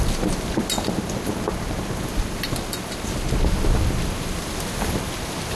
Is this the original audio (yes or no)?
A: no